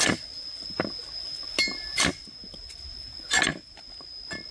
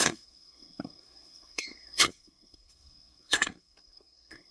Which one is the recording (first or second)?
first